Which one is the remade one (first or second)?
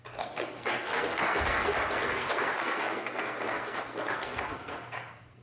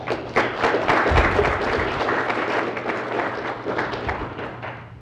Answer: first